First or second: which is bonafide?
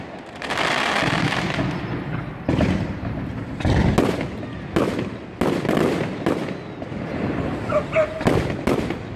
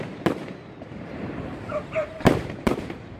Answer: first